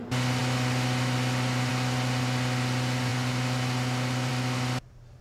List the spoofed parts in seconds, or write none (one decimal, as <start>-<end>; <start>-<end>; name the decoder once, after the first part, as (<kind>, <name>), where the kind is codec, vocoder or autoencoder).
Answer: none